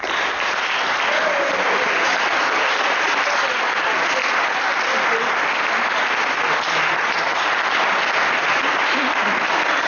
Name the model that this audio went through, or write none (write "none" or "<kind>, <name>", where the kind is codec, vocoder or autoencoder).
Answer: none